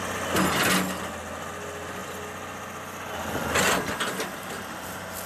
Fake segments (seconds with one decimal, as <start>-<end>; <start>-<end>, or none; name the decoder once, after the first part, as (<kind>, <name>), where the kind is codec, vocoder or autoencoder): none